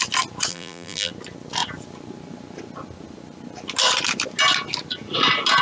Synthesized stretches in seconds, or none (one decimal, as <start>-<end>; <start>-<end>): 0.5-1.1